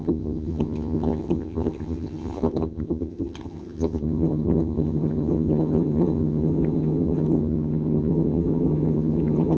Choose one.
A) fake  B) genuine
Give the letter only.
A